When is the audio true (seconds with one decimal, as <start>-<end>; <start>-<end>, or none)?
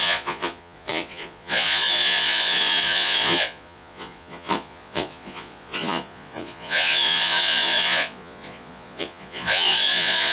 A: none